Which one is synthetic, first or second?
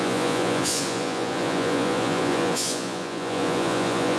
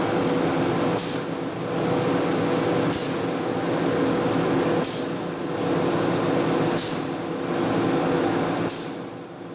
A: first